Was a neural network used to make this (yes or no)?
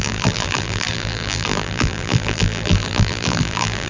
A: yes